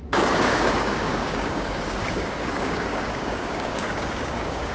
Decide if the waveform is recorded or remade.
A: remade